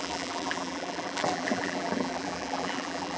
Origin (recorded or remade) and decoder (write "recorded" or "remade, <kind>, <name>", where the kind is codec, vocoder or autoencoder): remade, vocoder, BigVGAN v2